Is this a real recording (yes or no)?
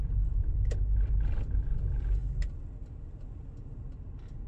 yes